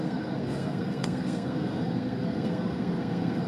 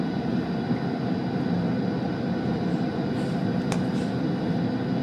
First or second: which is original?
second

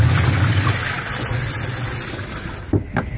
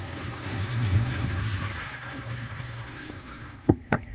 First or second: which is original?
first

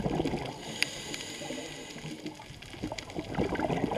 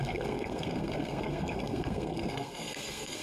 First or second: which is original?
first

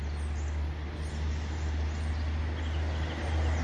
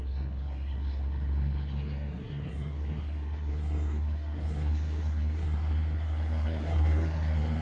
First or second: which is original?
first